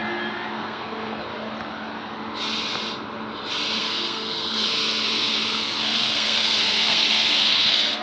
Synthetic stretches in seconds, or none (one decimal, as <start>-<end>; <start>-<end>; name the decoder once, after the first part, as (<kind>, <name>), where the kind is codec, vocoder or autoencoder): 0.5-1.3 (codec, SNAC); 3.8-8.0